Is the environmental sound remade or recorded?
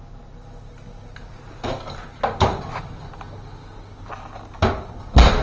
recorded